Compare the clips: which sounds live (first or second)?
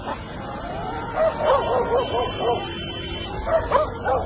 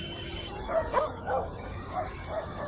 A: first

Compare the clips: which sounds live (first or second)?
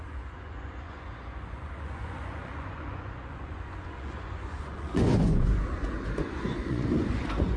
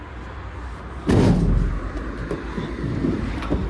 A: second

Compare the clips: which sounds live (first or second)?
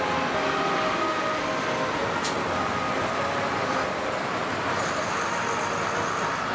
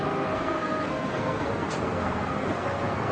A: first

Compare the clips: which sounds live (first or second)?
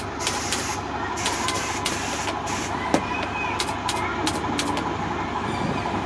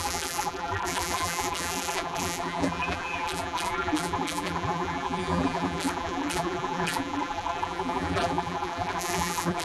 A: first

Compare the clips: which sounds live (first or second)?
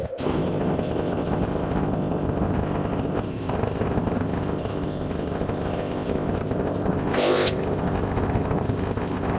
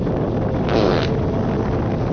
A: second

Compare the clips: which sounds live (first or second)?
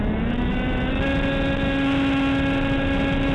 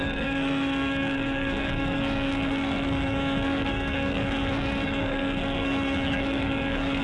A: first